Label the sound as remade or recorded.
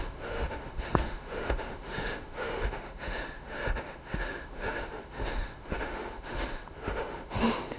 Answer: remade